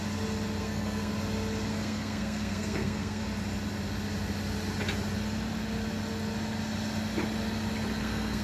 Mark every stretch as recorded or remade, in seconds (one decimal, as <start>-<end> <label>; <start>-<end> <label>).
0.0-0.6 recorded; 0.6-1.1 remade; 1.1-1.7 recorded; 1.7-3.2 remade; 3.2-8.0 recorded; 8.0-8.4 remade